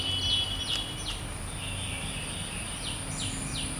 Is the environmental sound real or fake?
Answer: real